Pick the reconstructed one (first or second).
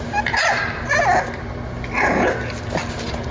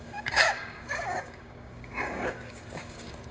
second